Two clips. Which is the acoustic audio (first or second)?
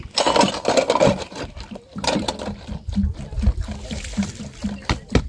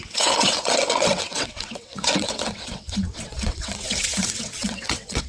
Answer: first